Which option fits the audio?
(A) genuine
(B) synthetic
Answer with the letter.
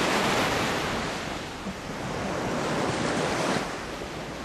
B